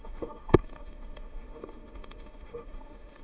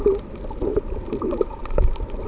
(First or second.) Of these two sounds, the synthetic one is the first